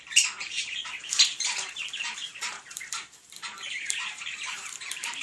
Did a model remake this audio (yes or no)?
yes